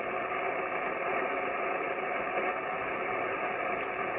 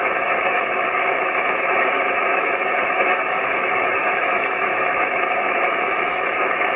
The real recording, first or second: first